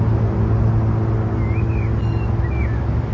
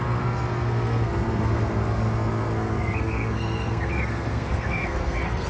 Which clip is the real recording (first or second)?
first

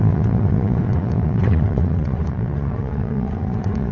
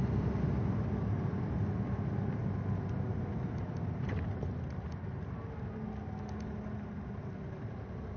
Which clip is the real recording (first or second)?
second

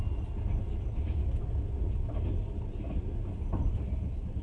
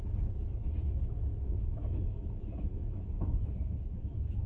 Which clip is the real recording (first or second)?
first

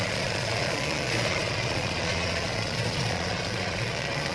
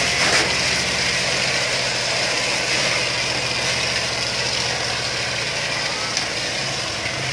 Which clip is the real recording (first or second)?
second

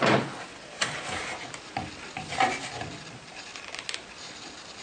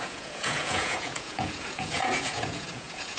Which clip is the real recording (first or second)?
first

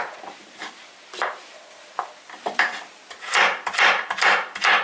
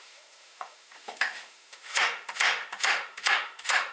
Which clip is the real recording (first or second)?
first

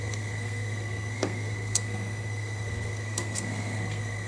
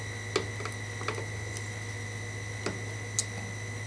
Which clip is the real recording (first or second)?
second